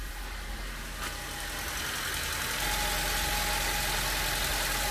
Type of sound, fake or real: real